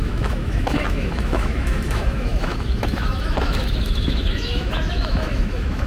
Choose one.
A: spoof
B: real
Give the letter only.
A